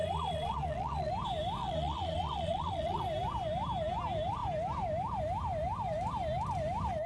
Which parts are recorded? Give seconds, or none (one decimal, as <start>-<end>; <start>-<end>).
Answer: 1.1-1.6; 3.0-7.1